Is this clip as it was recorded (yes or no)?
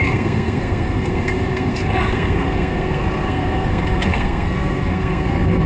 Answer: no